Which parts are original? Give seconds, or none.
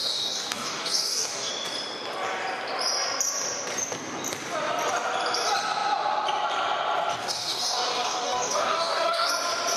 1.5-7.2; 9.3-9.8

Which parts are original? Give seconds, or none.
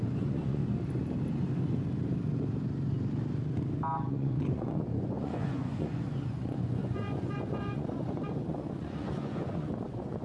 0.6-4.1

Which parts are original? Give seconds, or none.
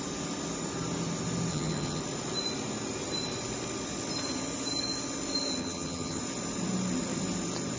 0.0-1.5; 2.0-5.6; 6.2-7.8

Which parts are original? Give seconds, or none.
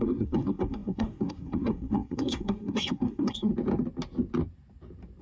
3.5-5.2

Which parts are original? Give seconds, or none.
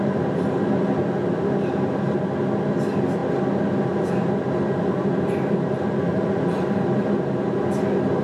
0.0-8.2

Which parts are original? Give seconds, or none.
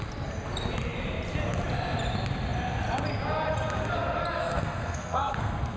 0.0-4.4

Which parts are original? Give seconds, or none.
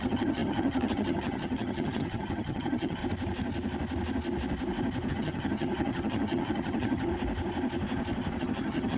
3.0-5.1; 7.1-8.4